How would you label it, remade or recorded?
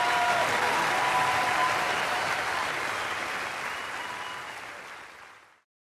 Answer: recorded